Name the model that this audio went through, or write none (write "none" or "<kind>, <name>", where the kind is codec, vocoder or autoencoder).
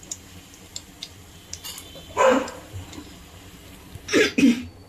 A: vocoder, BigVGAN v2